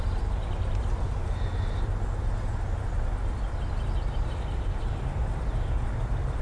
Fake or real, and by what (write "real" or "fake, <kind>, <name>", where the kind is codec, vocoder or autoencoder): real